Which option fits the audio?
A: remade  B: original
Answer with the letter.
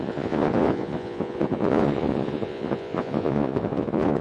A